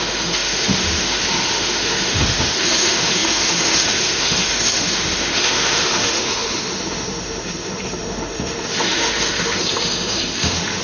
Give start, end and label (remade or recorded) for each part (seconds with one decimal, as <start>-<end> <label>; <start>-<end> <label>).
0.0-10.8 remade